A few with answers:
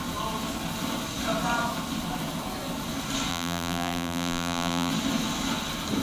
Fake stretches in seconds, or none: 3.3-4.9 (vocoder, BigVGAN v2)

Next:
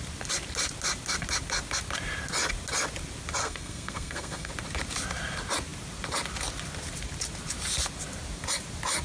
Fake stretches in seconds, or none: 3.4-4.5 (codec, SNAC)

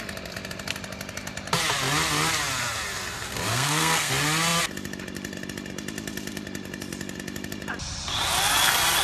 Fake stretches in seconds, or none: 3.5-4.1 (codec, SNAC)

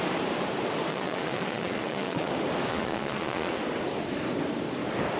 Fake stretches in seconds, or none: 0.9-2.3 (vocoder, Vocos); 2.7-3.6

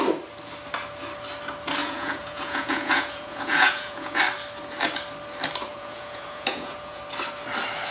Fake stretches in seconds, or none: 1.8-4.2 (vocoder, Vocos); 5.7-7.0

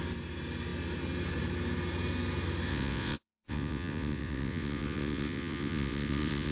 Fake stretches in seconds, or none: 2.7-6.5 (vocoder, WaveNeXt)